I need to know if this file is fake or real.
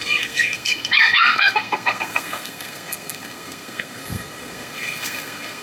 fake